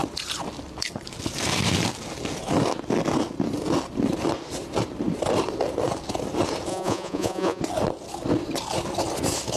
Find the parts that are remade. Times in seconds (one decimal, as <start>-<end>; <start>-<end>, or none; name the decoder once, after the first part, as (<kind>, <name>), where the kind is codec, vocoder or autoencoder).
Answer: 6.7-7.6 (vocoder, Vocos)

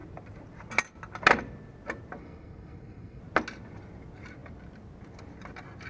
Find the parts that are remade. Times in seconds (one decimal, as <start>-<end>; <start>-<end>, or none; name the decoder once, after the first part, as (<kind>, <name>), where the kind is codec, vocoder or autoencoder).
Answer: 2.2-3.2 (codec, SNAC)

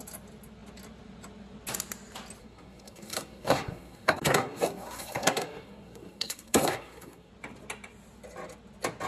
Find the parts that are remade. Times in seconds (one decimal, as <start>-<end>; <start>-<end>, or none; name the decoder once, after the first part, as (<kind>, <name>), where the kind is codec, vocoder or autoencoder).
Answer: 2.4-7.3 (codec, SNAC)

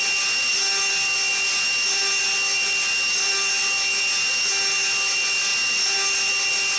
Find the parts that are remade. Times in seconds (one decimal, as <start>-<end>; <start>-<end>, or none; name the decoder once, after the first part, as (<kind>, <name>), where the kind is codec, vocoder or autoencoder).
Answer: none

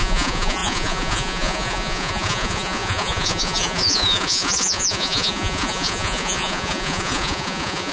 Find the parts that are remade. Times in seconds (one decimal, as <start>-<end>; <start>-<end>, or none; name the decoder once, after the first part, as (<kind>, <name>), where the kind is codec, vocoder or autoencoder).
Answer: 0.0-7.9 (vocoder, Vocos)